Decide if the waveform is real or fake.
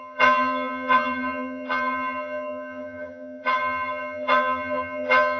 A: fake